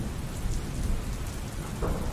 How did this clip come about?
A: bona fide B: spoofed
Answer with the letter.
A